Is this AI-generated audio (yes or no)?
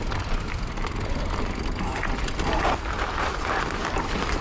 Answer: no